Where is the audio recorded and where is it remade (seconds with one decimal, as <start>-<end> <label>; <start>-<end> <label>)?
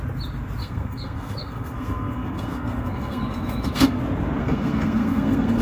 0.0-0.6 recorded; 0.6-4.0 remade; 4.0-4.4 recorded; 4.4-5.6 remade